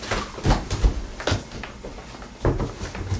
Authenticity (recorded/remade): recorded